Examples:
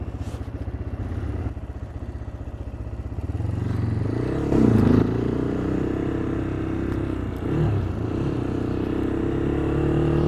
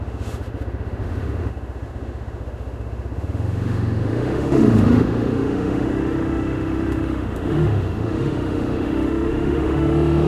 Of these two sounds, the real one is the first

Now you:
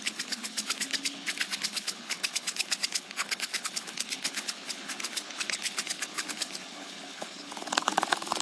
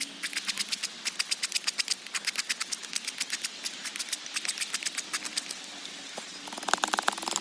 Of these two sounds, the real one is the second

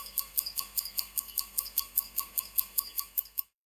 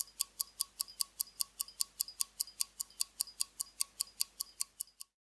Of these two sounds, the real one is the second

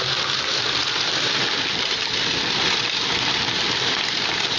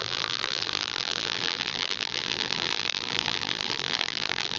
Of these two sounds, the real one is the first